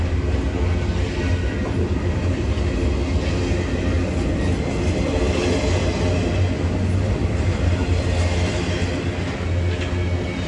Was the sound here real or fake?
real